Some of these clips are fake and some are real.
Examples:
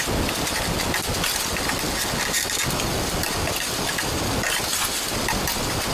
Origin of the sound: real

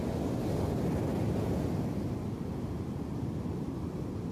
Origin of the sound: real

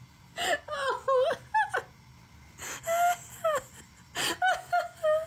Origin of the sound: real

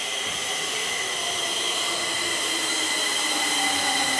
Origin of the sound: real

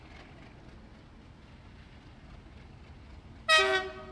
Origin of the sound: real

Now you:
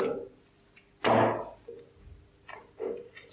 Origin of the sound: real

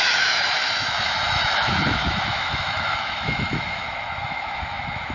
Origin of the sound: fake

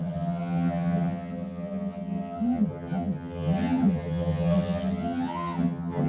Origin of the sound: fake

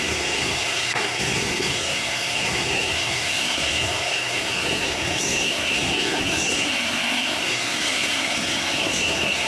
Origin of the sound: fake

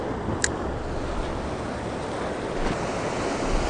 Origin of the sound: real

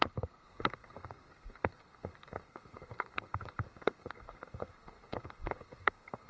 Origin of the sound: fake